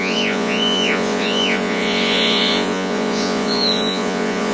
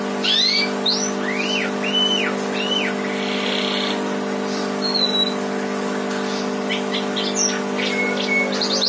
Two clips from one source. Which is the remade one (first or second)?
first